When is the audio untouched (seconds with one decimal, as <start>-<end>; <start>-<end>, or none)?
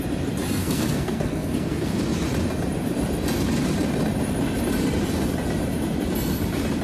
0.0-0.6; 2.0-6.8